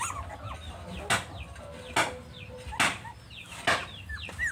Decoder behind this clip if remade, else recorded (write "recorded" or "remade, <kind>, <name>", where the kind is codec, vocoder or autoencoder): recorded